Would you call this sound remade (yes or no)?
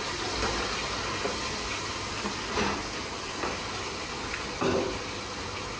no